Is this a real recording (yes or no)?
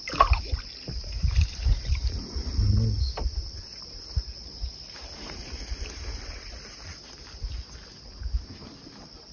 yes